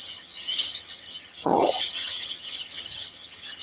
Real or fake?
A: fake